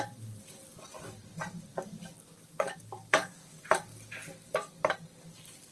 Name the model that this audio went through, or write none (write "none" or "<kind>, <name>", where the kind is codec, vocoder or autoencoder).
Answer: none